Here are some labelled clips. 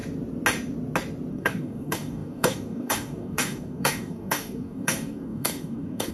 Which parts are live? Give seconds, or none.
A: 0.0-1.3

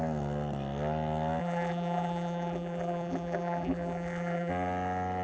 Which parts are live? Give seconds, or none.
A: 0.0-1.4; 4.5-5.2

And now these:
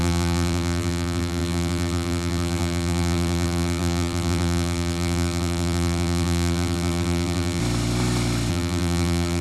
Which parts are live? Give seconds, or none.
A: 7.6-8.5

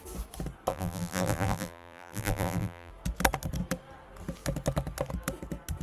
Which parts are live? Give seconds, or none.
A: 0.0-0.7; 2.9-5.8

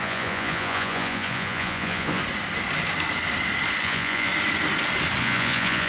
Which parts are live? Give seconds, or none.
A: 2.2-3.8; 4.3-5.2